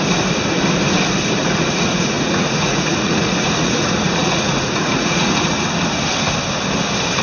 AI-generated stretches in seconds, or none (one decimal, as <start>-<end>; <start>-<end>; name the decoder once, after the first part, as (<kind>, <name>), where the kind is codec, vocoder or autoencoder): 1.4-5.7 (vocoder, Vocos)